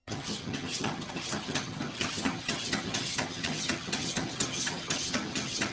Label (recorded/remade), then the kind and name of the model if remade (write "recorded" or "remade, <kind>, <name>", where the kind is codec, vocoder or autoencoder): remade, vocoder, HiFi-GAN